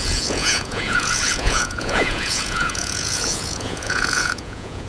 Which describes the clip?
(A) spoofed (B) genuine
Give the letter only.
A